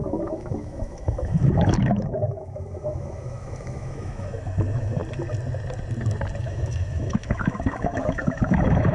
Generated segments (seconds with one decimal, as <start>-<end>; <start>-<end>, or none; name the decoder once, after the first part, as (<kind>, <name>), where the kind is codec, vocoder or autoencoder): 0.0-5.0 (autoencoder, DAC-VAE); 6.4-8.9

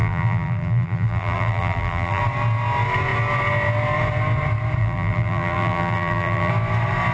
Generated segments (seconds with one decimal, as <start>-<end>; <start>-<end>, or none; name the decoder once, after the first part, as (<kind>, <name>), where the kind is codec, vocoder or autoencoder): 0.0-2.2 (vocoder, BigVGAN v2); 4.8-6.5

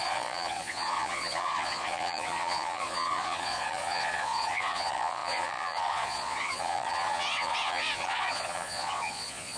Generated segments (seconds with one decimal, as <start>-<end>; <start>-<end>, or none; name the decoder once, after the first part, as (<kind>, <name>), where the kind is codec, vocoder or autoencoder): 0.0-9.6 (vocoder, Vocos)

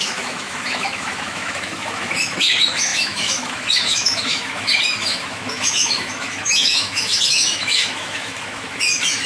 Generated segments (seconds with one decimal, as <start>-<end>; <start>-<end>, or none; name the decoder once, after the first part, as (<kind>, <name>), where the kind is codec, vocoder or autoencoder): 0.0-9.3 (autoencoder, DAC-VAE)

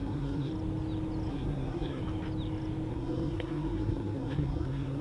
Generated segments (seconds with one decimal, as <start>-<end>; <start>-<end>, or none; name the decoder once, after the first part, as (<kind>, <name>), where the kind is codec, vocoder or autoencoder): 0.0-0.5 (codec, SNAC); 1.3-2.0; 2.9-5.0

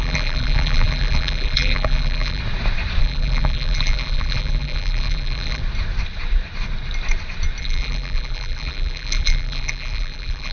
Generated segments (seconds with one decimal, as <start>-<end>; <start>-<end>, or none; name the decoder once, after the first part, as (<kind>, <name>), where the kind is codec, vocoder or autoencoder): 0.0-2.4 (vocoder, BigVGAN v2); 3.0-5.6; 7.6-10.5

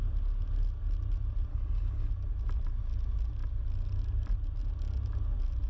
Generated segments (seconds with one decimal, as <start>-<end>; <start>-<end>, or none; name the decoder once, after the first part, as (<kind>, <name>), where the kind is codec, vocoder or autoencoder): 1.5-2.1 (codec, HILCodec)